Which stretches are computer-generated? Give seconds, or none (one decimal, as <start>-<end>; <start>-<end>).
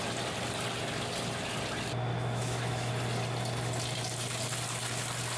2.1-2.9